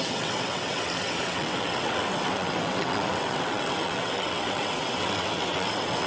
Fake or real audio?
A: fake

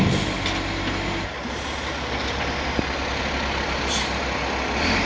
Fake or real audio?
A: real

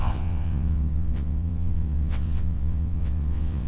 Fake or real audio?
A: fake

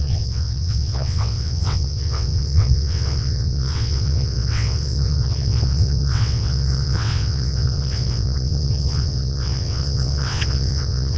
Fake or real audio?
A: fake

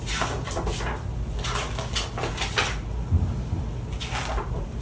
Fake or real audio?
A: real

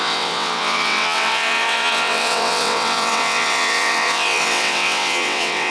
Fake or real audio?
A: fake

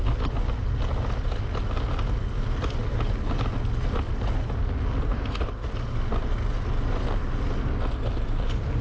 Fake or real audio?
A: real